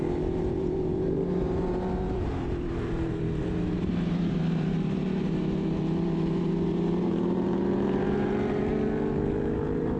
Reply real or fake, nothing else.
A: fake